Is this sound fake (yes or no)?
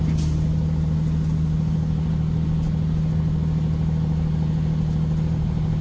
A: no